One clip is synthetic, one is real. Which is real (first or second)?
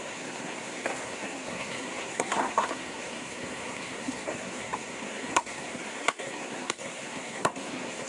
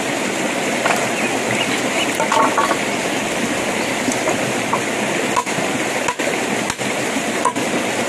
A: second